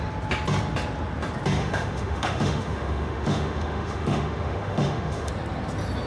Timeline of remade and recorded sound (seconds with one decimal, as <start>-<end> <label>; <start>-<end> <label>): 0.0-1.6 recorded; 1.6-5.3 remade; 5.3-6.1 recorded